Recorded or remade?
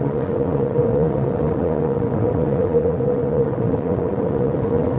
remade